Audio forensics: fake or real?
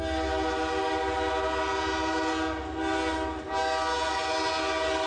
real